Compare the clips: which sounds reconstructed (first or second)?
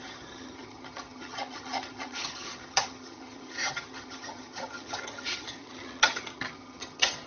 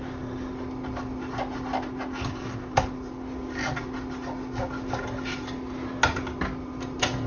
first